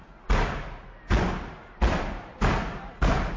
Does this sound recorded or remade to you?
recorded